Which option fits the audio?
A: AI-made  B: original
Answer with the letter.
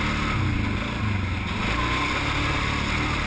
B